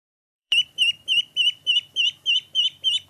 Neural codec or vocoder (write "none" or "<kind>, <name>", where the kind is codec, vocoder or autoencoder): vocoder, BigVGAN v2